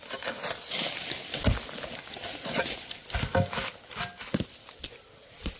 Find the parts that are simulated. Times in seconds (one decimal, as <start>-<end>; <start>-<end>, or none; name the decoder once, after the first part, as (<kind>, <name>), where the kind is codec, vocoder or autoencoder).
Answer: none